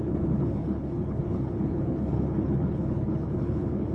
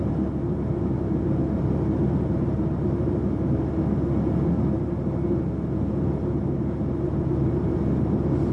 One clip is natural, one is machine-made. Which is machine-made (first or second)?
first